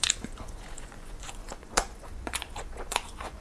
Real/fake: fake